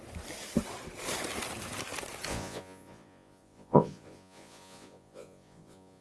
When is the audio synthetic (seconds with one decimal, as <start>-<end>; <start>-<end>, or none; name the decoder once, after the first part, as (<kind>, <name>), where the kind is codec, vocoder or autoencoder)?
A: 2.3-6.0 (vocoder, Vocos)